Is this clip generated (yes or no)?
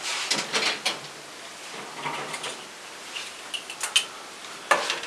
no